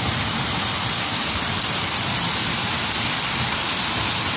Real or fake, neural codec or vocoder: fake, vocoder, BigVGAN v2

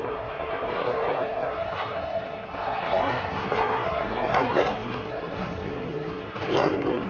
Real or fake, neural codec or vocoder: fake, codec, SNAC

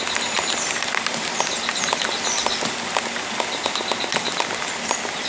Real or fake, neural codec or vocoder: real